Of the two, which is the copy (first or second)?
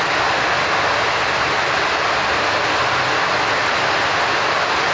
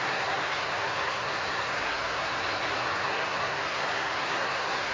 second